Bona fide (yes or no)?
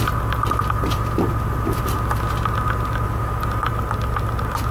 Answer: yes